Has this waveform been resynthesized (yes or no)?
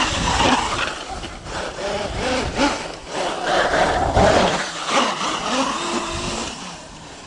no